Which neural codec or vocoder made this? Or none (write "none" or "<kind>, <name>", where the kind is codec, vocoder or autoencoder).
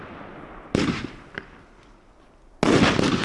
none